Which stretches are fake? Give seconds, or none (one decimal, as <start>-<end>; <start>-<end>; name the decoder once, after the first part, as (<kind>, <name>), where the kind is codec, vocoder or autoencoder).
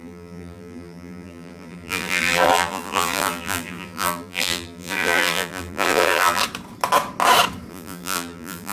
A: 0.0-6.4 (vocoder, BigVGAN v2); 7.7-8.7